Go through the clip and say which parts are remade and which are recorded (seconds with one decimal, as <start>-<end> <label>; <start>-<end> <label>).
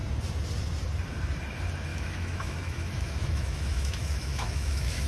0.0-1.9 recorded; 1.9-5.1 remade